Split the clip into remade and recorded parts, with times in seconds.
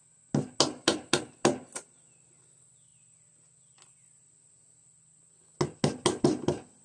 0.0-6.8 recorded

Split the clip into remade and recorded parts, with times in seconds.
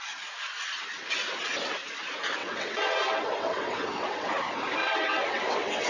0.0-2.4 recorded; 2.4-4.3 remade; 4.3-4.8 recorded; 4.8-5.9 remade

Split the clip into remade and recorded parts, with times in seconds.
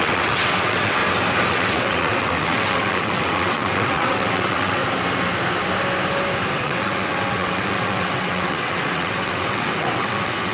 0.0-1.0 remade; 1.0-1.5 recorded; 1.5-4.8 remade; 4.8-6.5 recorded; 6.5-10.5 remade